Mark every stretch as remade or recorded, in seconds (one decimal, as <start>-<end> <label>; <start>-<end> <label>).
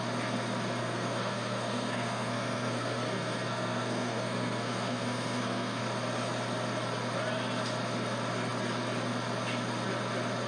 0.0-0.8 recorded; 0.8-5.8 remade; 5.8-10.5 recorded